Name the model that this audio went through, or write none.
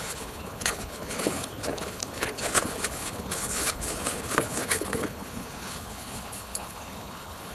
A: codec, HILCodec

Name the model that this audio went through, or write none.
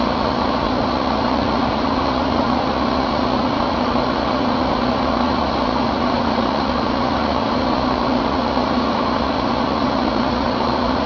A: vocoder, Vocos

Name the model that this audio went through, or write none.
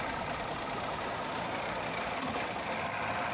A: none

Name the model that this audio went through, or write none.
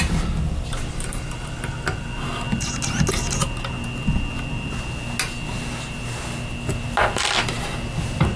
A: none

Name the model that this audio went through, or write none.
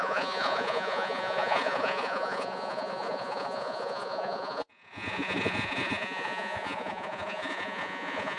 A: vocoder, Vocos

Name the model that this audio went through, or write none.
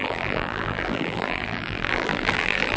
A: vocoder, BigVGAN v2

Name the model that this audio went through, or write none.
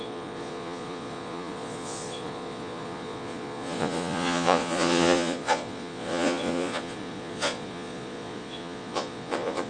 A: vocoder, Vocos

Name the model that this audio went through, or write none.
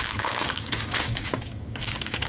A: codec, DAC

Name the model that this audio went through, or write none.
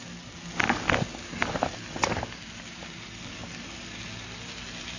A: none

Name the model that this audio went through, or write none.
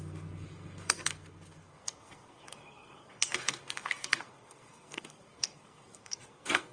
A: codec, SNAC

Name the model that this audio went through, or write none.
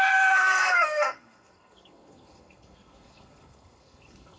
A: codec, SNAC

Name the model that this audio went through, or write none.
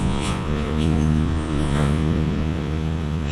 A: vocoder, Vocos